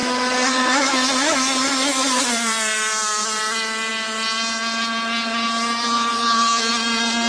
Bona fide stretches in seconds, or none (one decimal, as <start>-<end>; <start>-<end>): 2.2-5.8; 6.7-7.3

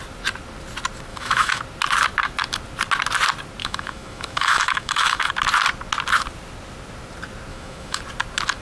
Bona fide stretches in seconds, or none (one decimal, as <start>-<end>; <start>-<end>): 0.0-1.1; 1.6-3.6; 5.3-7.5; 8.0-8.6

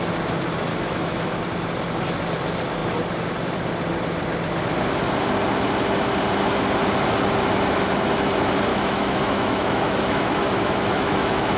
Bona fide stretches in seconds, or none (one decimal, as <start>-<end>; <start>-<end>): 0.0-0.7; 1.4-8.7